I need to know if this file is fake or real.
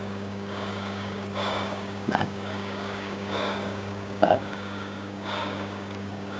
fake